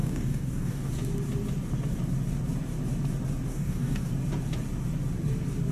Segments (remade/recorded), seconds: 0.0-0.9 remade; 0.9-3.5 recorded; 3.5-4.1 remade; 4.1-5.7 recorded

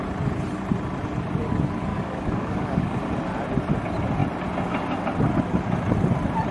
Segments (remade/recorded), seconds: 0.0-1.9 recorded; 1.9-3.0 remade; 3.0-6.5 recorded

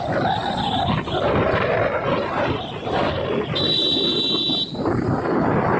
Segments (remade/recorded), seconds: 0.0-5.8 recorded

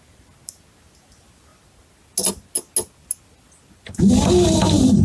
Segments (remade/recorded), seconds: 0.0-5.0 recorded

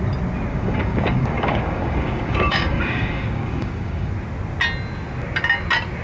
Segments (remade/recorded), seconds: 0.0-0.5 recorded; 0.5-4.1 remade; 4.1-6.0 recorded

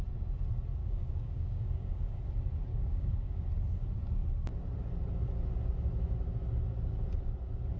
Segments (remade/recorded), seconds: 0.0-0.8 recorded; 0.8-2.2 remade; 2.2-2.7 recorded; 2.7-3.4 remade; 3.4-7.8 recorded

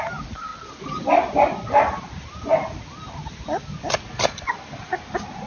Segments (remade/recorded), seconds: 0.0-5.5 recorded